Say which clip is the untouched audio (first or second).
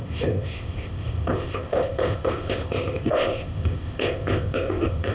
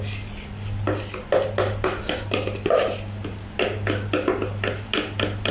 second